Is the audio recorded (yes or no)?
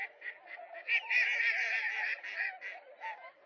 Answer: yes